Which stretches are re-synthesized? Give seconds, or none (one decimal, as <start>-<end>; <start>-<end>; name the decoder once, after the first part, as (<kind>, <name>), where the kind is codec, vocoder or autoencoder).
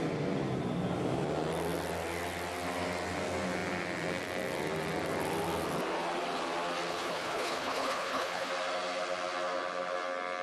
6.9-8.5 (codec, HILCodec)